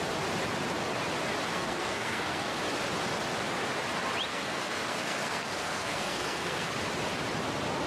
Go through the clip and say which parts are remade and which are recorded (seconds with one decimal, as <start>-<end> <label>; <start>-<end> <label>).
0.0-1.5 recorded; 1.5-2.6 remade; 2.6-4.3 recorded; 4.3-6.7 remade; 6.7-7.9 recorded